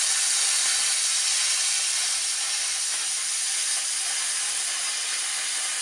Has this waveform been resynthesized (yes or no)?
no